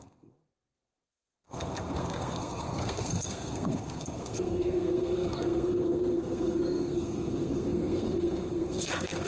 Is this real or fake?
fake